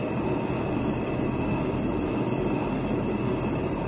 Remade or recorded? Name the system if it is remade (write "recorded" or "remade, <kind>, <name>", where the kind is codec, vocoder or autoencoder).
recorded